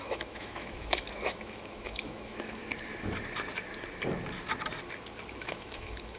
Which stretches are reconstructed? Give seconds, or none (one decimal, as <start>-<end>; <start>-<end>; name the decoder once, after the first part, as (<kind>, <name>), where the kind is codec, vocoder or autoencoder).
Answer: 0.0-2.6 (autoencoder, DAC-VAE); 5.4-6.2

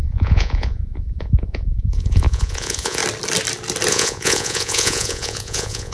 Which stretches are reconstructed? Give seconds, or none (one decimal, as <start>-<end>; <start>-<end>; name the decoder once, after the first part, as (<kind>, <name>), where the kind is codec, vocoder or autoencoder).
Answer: 0.0-3.0 (vocoder, Vocos); 3.9-5.9

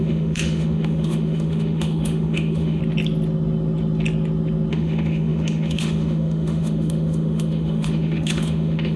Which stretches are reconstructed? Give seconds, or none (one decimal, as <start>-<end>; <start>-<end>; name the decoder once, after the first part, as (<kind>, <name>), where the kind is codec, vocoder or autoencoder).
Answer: 0.0-2.8 (autoencoder, DAC-VAE); 4.7-9.0